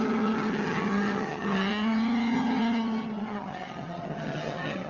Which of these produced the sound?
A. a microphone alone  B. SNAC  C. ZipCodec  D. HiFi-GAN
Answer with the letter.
D